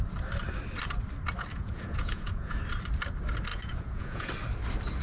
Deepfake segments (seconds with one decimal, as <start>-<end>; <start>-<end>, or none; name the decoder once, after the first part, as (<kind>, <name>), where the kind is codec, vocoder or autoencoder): 1.5-2.6 (vocoder, Vocos); 3.5-4.3